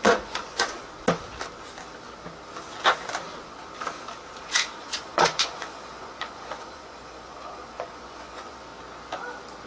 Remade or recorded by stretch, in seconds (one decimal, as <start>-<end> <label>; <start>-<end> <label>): 0.0-0.8 remade; 0.8-4.4 recorded; 4.4-8.7 remade; 8.7-9.7 recorded